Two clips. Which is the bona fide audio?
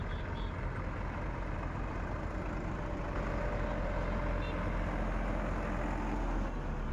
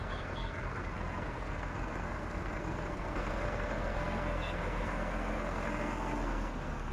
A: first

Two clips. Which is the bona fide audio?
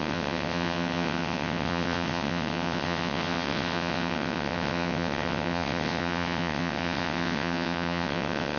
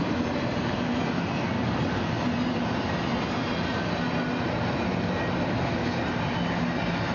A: second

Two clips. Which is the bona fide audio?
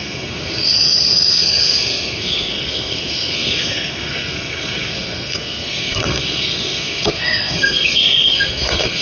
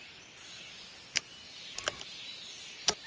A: second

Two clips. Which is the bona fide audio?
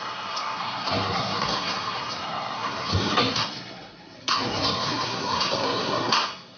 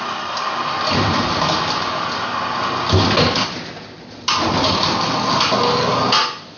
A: second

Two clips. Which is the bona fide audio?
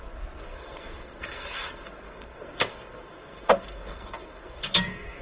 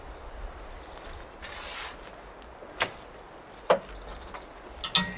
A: second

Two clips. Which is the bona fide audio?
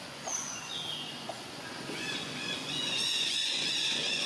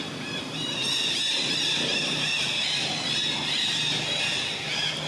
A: second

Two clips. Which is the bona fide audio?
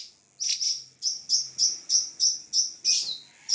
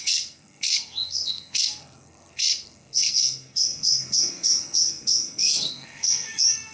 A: first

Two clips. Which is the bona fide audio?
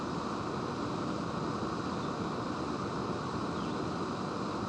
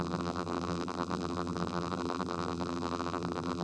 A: first